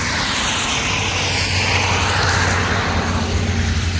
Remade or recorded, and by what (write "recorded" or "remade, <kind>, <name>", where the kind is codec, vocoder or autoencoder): recorded